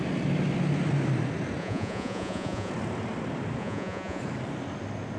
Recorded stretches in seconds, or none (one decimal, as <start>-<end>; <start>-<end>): 0.0-1.6; 2.7-3.6; 4.2-5.2